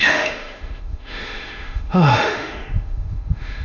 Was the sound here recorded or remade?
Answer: remade